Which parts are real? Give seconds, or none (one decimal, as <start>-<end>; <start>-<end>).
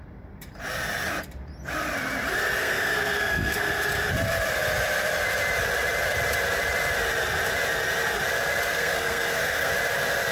0.0-2.6; 3.7-8.7; 9.7-10.3